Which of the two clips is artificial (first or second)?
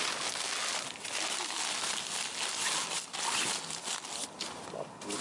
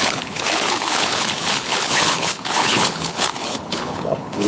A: second